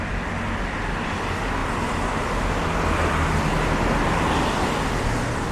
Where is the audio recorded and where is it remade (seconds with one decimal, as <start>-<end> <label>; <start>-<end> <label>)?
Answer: 0.0-5.5 recorded